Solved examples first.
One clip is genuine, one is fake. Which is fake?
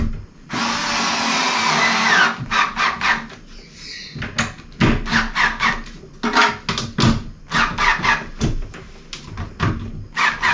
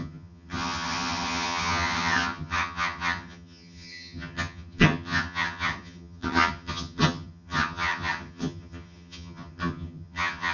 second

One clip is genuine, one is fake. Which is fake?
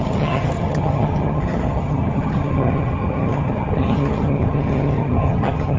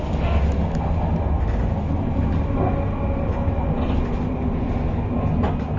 first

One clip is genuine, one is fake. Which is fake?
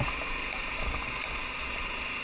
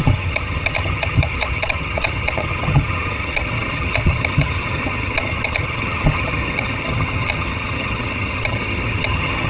second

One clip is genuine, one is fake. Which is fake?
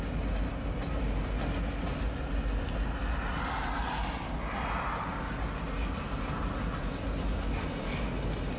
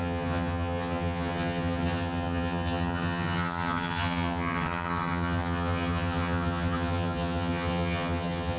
second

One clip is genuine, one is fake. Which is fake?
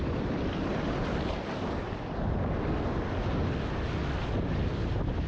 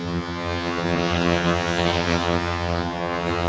second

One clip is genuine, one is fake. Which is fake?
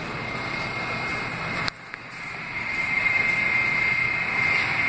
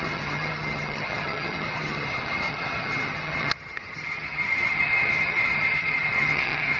second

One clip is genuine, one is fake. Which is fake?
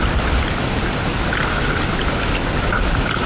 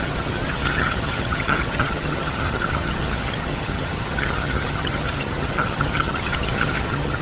second